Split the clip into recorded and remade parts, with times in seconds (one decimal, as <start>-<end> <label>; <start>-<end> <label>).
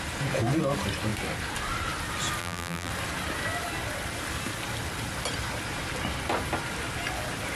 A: 0.0-2.4 recorded; 2.4-2.9 remade; 2.9-7.6 recorded